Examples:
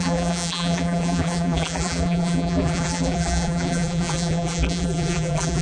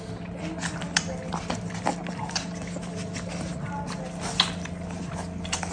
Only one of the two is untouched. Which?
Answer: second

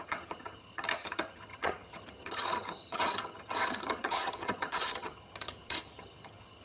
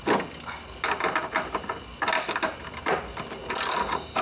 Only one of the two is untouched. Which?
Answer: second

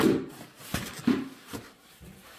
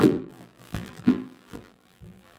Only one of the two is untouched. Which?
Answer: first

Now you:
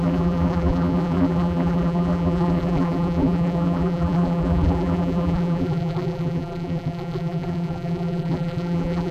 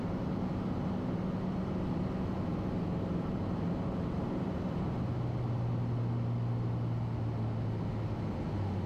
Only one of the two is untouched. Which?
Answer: second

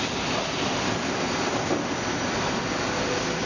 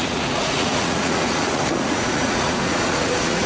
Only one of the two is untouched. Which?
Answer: first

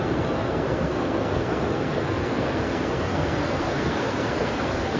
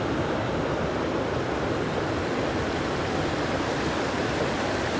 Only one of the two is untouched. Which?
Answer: second